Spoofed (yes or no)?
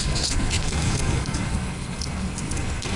yes